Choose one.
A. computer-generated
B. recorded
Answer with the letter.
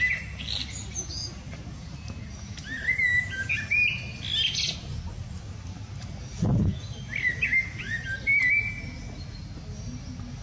B